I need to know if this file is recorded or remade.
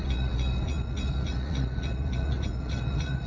remade